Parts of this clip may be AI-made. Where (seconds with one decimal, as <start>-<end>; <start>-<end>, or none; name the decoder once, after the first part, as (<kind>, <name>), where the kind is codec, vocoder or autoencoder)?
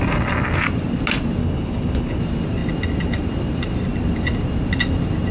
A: 1.4-2.2 (codec, HILCodec)